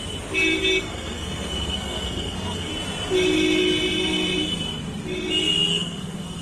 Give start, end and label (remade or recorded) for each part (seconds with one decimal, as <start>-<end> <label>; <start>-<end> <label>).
0.0-0.8 recorded; 0.8-2.7 remade; 2.7-5.7 recorded; 5.7-6.4 remade